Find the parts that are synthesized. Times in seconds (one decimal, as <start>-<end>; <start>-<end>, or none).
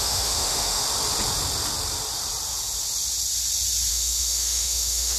0.0-0.8; 3.9-5.2